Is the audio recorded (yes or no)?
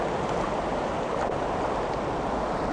yes